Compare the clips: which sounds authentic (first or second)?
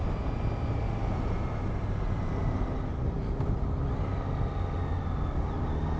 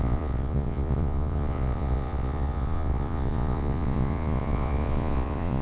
first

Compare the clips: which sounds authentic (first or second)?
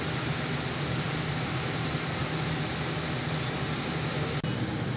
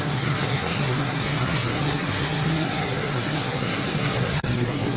first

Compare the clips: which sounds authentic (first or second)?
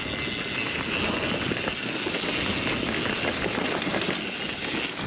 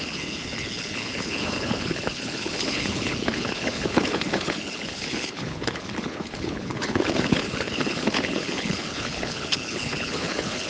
first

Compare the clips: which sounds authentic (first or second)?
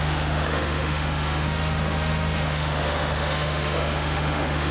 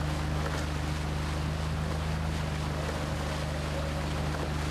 second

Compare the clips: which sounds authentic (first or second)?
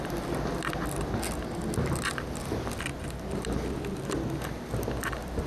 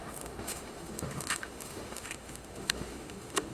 first